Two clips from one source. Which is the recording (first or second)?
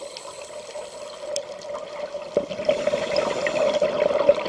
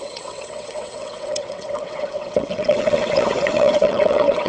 first